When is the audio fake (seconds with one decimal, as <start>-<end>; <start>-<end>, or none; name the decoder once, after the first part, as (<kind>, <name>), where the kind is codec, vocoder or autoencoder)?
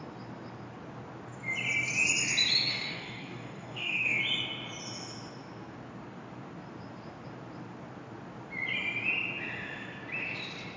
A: 2.7-4.2 (codec, DAC)